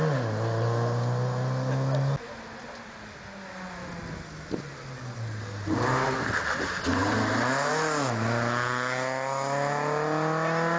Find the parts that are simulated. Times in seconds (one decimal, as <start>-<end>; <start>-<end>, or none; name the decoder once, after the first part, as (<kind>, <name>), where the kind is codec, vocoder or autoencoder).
none